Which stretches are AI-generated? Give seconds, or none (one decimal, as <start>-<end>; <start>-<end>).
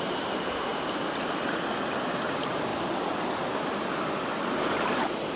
0.0-0.7; 1.2-2.7